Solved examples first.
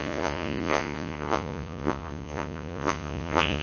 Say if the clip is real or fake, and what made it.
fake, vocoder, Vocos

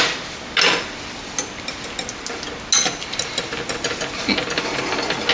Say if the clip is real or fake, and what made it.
real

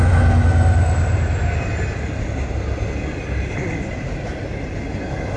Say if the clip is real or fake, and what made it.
real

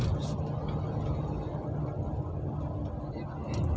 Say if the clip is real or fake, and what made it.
real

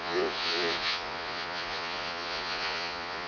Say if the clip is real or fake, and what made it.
fake, vocoder, Vocos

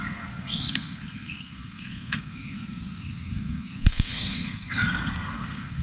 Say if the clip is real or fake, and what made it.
fake, codec, SNAC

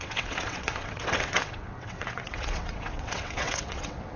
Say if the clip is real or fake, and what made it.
fake, vocoder, WaveNeXt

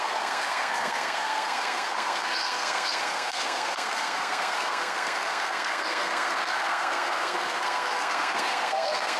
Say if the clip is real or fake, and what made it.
fake, codec, SNAC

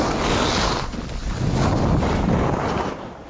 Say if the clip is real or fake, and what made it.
real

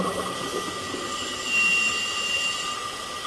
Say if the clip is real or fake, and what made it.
real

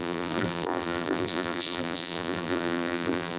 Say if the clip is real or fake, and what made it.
fake, vocoder, BigVGAN v2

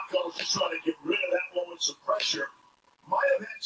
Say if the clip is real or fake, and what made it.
real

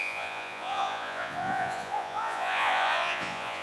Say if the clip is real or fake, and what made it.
fake, vocoder, Vocos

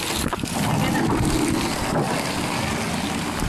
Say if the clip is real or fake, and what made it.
real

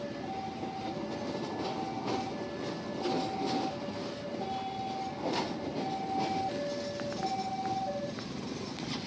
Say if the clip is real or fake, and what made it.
real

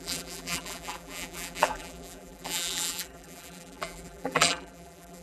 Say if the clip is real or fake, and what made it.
fake, vocoder, BigVGAN v2